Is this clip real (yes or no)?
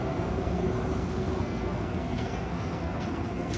no